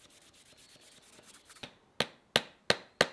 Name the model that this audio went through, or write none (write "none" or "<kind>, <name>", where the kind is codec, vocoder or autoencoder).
none